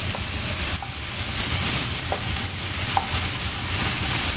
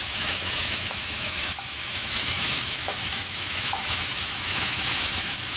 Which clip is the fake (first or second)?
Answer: second